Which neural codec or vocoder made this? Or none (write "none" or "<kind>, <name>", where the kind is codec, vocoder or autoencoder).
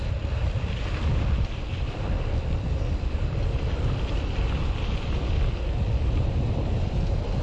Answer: vocoder, BigVGAN v2